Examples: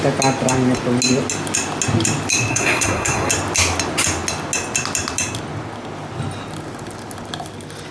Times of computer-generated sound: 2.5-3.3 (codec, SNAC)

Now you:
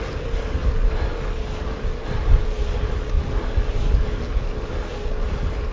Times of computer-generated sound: none

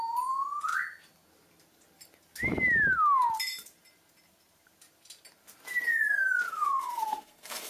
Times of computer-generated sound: 6.5-7.7 (codec, SNAC)

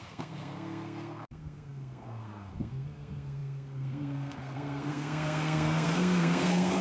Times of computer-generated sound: 0.0-6.8 (codec, SNAC)

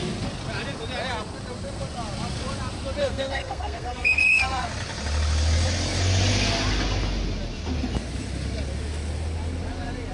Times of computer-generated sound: 3.0-4.7 (codec, SNAC)

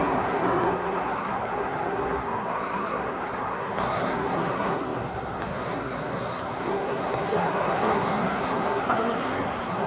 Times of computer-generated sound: 0.0-9.9 (codec, SNAC)

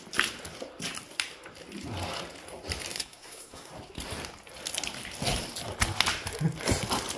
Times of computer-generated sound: 2.9-3.7 (codec, SNAC)